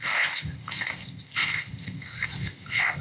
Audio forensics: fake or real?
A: fake